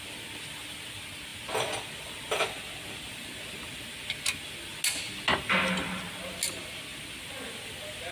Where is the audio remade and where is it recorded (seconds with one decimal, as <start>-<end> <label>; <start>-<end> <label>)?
0.0-8.1 recorded